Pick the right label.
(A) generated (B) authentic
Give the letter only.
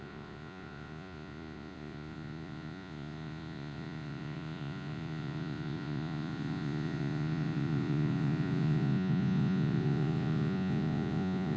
A